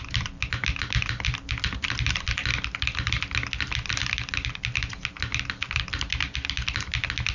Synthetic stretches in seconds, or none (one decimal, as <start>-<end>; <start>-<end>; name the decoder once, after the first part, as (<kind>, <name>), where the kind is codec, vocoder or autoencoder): none